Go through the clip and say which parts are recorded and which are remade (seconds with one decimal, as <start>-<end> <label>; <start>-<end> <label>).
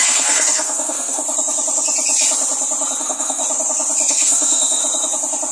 0.0-1.2 remade; 1.2-3.0 recorded; 3.0-3.4 remade; 3.4-4.1 recorded; 4.1-4.8 remade; 4.8-5.5 recorded